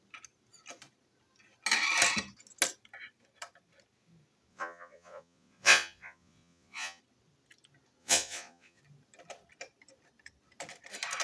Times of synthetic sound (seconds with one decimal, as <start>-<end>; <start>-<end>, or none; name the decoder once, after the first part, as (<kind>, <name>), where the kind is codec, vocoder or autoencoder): 4.5-7.0 (vocoder, Vocos); 8.0-8.8